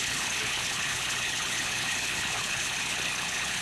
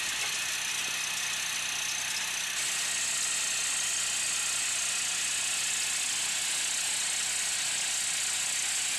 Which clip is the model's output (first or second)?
first